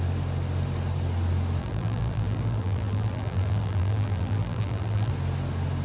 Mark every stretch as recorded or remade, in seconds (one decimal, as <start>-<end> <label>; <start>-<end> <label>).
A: 0.0-1.6 recorded; 1.6-5.1 remade; 5.1-5.8 recorded